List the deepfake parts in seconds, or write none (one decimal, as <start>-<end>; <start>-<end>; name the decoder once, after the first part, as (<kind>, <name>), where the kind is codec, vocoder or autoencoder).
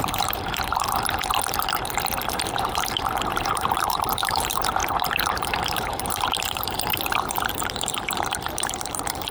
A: 0.0-0.7 (vocoder, BigVGAN v2); 2.3-9.3